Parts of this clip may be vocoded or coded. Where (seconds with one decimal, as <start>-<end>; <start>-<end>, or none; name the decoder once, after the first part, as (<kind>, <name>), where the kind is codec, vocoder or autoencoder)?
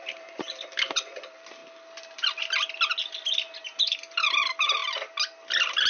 0.0-1.6 (vocoder, BigVGAN v2); 3.8-4.8